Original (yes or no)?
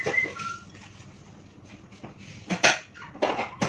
yes